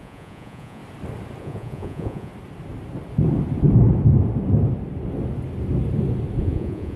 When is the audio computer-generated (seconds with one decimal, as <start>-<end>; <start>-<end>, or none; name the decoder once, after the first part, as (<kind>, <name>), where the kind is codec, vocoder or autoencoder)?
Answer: 0.0-0.8 (vocoder, Vocos); 1.4-2.3; 6.4-7.0